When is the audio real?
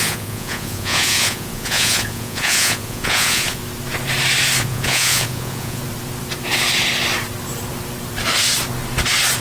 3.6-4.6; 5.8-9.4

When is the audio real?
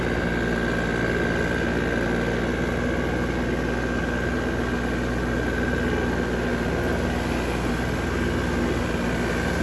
0.0-9.6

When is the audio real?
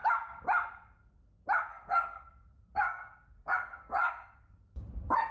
0.0-1.7; 4.6-5.3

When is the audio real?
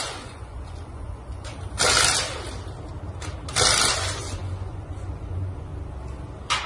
1.5-3.9; 5.7-6.7